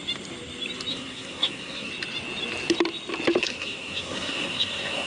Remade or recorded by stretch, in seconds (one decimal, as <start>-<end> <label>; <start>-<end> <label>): 0.0-0.9 recorded; 0.9-1.9 remade; 1.9-3.4 recorded; 3.4-5.1 remade